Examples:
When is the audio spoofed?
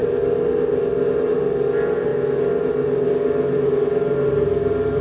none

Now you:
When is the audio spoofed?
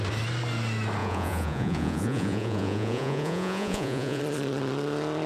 1.0-4.2 (vocoder, Vocos)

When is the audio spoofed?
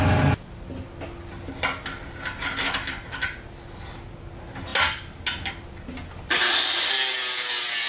none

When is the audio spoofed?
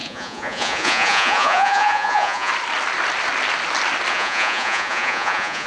0.0-2.5 (vocoder, Vocos); 4.1-5.7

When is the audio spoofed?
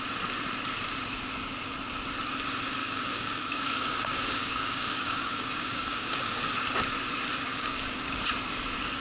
2.8-6.5 (codec, DAC); 7.5-8.2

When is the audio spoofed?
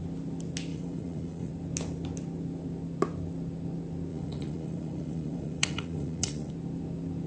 0.7-1.5 (vocoder, Vocos); 4.1-6.5